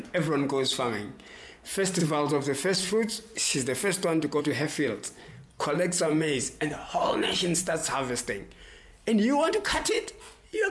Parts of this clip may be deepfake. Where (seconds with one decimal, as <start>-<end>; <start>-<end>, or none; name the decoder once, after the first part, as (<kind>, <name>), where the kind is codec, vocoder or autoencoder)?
0.0-7.8 (vocoder, Vocos); 9.5-10.7